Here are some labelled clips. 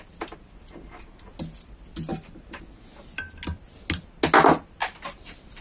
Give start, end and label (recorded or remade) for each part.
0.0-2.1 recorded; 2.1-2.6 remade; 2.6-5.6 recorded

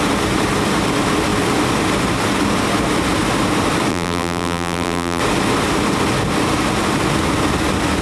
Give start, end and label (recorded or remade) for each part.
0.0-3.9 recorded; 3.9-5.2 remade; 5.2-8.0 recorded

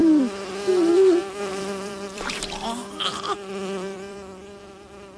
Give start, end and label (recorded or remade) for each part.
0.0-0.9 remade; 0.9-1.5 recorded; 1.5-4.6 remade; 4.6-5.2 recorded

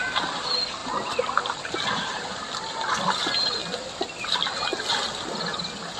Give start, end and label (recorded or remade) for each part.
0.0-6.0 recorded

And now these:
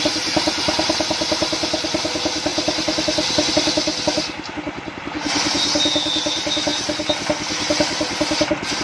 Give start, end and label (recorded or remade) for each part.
0.0-8.8 recorded